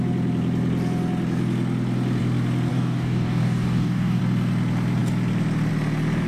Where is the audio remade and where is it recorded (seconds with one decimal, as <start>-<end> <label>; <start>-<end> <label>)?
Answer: 0.0-2.7 recorded; 2.7-4.2 remade; 4.2-6.3 recorded